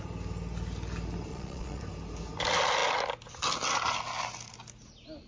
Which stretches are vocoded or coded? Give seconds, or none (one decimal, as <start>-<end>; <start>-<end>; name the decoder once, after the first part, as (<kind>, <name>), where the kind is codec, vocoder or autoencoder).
1.3-1.8 (vocoder, Vocos)